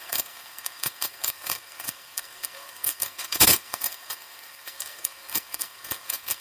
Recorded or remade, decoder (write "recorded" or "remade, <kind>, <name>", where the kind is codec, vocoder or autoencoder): remade, codec, SNAC